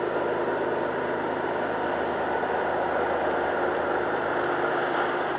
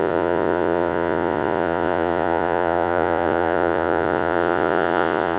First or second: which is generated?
second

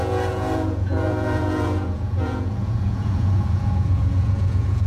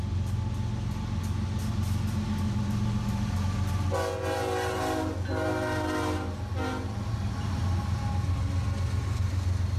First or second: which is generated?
first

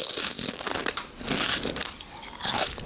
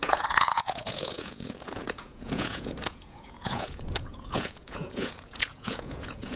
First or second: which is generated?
second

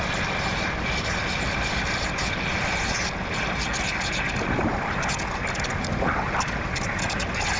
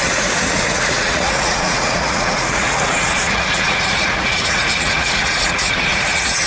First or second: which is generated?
second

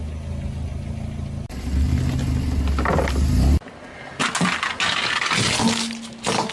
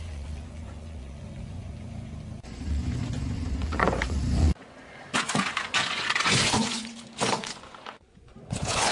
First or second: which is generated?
second